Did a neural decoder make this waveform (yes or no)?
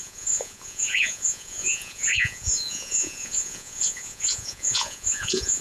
yes